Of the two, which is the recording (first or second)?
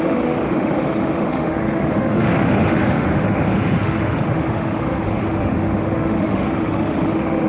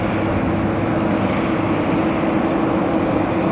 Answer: second